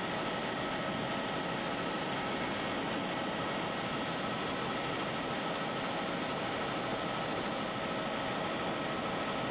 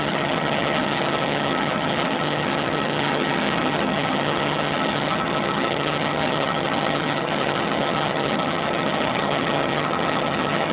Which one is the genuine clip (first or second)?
first